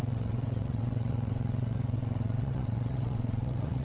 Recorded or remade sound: remade